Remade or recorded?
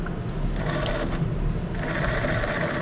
recorded